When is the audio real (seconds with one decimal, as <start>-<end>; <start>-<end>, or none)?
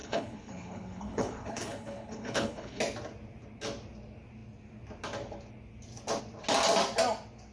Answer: 2.8-7.5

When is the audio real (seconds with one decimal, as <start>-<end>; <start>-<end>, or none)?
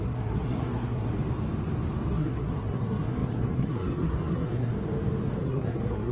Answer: 1.1-2.1; 4.7-5.4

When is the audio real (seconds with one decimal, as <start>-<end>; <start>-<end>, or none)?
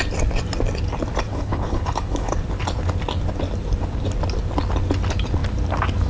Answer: 0.0-1.3; 2.3-6.1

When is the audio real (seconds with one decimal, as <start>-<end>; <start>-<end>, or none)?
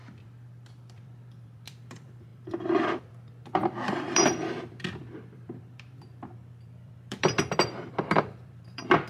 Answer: none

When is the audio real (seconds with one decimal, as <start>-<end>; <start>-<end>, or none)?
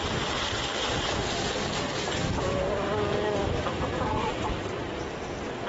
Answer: 0.0-5.7